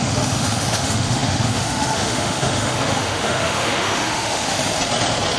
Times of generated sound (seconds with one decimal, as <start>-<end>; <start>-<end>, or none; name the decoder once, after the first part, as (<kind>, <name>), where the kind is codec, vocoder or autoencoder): 0.0-4.6 (autoencoder, DAC-VAE)